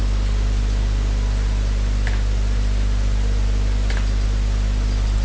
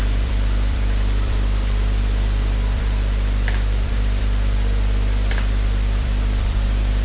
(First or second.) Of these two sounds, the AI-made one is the second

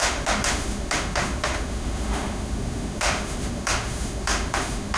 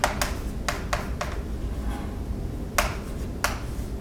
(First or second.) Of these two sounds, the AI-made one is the first